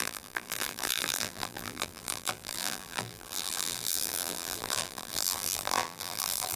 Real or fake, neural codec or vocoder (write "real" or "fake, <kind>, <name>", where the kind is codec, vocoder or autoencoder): fake, vocoder, BigVGAN v2